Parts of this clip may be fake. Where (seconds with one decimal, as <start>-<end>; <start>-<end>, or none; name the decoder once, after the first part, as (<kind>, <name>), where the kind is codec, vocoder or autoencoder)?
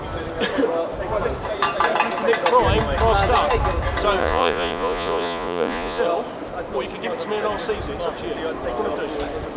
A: 4.2-6.0 (vocoder, Vocos)